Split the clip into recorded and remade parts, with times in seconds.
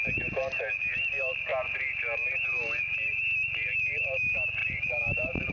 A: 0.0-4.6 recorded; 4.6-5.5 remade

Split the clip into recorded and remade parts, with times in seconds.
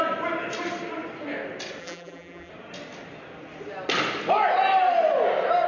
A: 0.0-1.8 recorded; 1.8-2.5 remade; 2.5-5.7 recorded